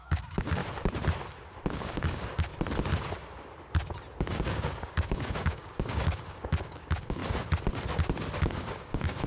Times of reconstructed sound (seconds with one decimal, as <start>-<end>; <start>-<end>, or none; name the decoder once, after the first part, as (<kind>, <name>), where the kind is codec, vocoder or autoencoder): 0.0-0.6 (codec, DAC); 1.7-2.5; 4.2-7.2; 8.5-9.3

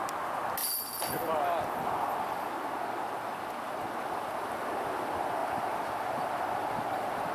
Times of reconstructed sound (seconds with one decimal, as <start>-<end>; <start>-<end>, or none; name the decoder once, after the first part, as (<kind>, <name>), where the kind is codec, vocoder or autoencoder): none

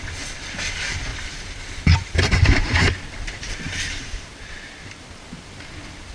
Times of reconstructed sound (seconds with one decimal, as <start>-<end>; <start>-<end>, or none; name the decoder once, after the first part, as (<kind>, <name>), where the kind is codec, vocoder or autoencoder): 1.1-3.9 (vocoder, BigVGAN v2)

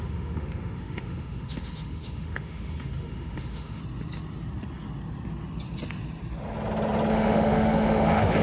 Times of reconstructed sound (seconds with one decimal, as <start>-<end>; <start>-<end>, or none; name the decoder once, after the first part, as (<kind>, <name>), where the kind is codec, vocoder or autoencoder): 0.0-3.8 (autoencoder, DAC-VAE); 7.1-8.4

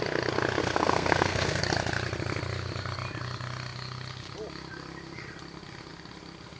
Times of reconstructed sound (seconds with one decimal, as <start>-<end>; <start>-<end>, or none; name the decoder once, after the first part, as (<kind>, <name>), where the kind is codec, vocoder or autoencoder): 0.6-1.6 (codec, SNAC)